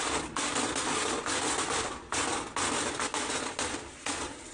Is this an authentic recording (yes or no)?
yes